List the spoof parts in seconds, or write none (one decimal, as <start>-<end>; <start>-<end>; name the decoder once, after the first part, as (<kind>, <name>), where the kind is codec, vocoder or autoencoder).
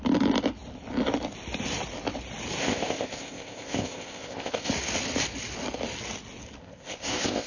2.6-4.7 (codec, ZipCodec); 6.6-7.5